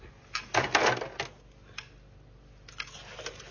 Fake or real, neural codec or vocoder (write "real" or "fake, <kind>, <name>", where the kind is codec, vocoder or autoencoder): real